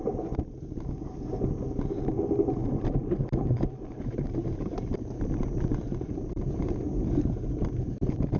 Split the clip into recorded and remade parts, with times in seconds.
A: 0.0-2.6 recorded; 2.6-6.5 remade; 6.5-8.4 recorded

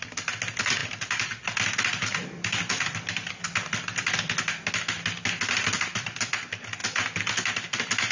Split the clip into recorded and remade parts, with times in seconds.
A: 0.0-8.1 recorded

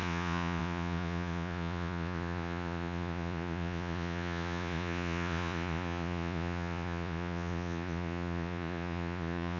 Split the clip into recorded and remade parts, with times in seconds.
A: 0.0-9.6 remade

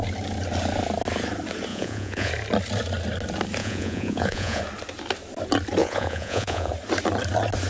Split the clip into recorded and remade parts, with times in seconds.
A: 0.0-1.7 recorded; 1.7-2.3 remade; 2.3-3.6 recorded; 3.6-4.6 remade; 4.6-5.8 recorded; 5.8-6.7 remade; 6.7-7.7 recorded